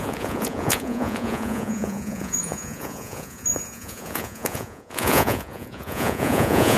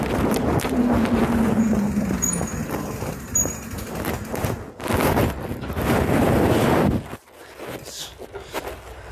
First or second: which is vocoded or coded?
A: first